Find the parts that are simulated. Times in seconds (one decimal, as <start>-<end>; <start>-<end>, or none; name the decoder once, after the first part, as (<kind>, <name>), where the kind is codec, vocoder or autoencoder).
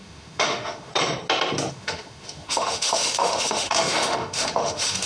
0.0-0.9 (autoencoder, DAC-VAE); 1.7-5.1